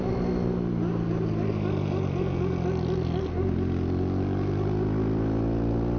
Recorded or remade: recorded